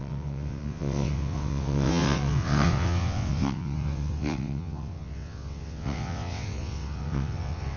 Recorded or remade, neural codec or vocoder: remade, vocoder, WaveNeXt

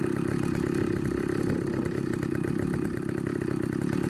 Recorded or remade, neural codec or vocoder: recorded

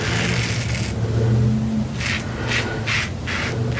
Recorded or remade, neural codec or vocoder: recorded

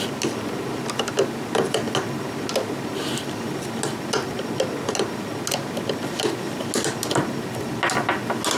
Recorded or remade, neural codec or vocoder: recorded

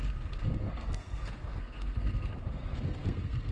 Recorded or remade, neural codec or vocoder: remade, codec, SNAC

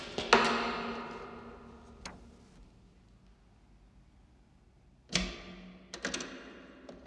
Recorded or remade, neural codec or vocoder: recorded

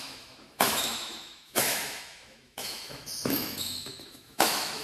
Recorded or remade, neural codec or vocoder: remade, autoencoder, DAC-VAE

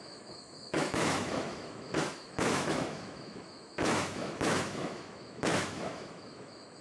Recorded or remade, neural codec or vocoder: remade, autoencoder, DAC-VAE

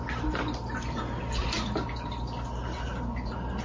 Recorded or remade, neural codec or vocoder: recorded